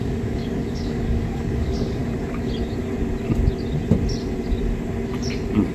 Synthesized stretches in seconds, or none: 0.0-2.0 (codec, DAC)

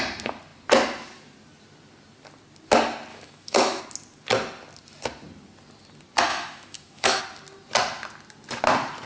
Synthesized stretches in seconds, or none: 3.1-3.8 (autoencoder, DAC-VAE); 6.3-7.2

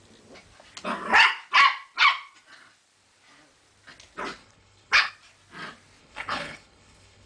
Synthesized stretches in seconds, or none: 4.4-5.1 (codec, HILCodec); 6.0-7.3

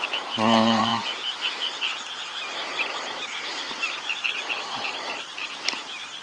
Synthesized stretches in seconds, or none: 0.0-6.2 (vocoder, BigVGAN v2)

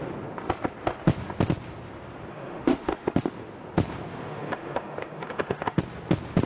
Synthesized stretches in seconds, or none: 2.3-3.3 (autoencoder, DAC-VAE); 4.1-5.8

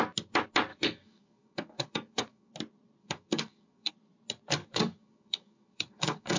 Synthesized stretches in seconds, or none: 0.7-2.5 (codec, DAC); 3.0-3.9; 4.6-6.4

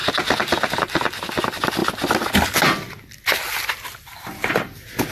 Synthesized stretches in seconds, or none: none

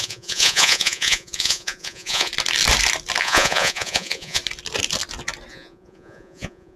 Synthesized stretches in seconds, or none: 0.0-2.3 (vocoder, Vocos); 3.2-4.4; 5.5-6.8